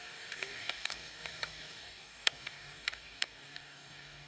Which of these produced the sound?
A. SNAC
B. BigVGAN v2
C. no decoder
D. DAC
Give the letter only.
D